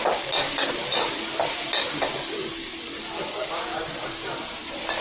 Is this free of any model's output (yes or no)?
yes